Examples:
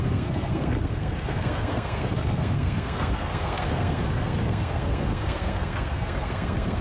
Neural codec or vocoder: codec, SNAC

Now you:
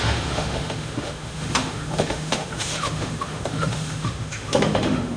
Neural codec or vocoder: autoencoder, DAC-VAE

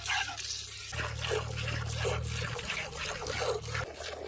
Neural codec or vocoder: none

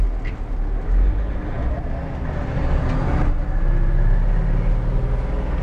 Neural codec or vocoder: none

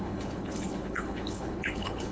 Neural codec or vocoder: codec, HILCodec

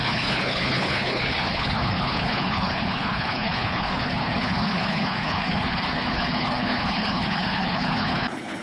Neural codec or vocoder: codec, HILCodec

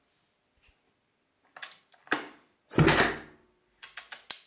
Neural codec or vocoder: none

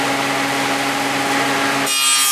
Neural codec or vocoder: none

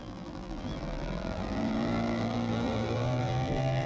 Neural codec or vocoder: vocoder, BigVGAN v2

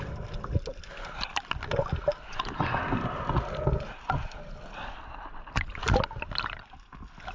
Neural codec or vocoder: none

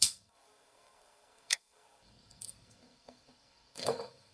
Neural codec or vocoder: codec, SNAC